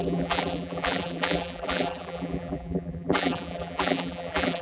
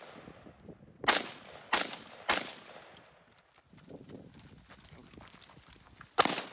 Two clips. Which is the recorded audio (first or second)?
second